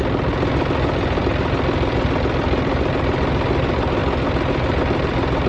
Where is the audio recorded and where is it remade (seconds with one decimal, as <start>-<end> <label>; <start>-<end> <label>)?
0.0-5.5 recorded